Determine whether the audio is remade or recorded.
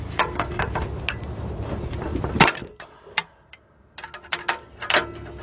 recorded